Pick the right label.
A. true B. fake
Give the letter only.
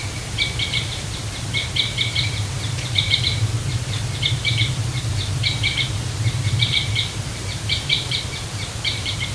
B